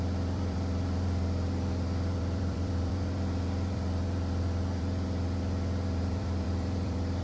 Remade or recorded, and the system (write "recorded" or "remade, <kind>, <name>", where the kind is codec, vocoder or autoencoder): remade, vocoder, BigVGAN v2